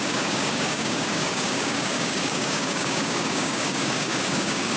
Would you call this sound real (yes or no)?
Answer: no